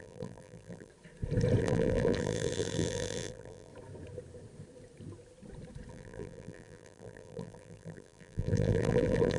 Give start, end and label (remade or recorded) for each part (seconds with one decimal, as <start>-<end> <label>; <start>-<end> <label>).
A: 0.0-0.9 remade; 0.9-1.6 recorded; 1.6-3.7 remade; 3.7-5.9 recorded; 5.9-9.4 remade